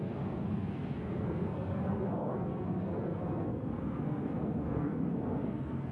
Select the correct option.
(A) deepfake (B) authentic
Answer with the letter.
A